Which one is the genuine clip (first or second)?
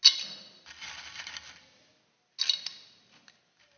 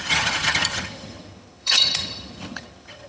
first